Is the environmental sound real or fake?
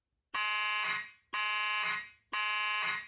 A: real